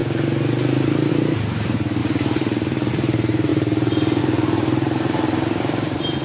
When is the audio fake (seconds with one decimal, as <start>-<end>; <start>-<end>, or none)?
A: 1.1-6.2